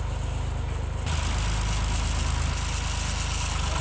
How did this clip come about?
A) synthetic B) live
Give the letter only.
B